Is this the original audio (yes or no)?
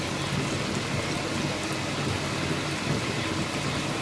yes